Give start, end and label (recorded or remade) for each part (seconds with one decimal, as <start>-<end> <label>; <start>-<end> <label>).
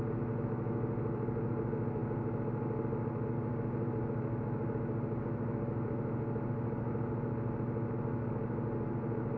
0.0-9.4 recorded